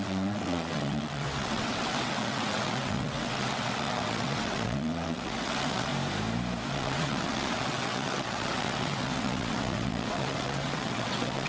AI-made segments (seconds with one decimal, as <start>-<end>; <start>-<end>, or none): 0.0-5.9; 6.7-11.5